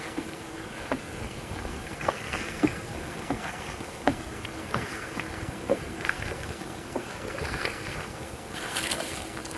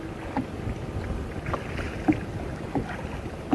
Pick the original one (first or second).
second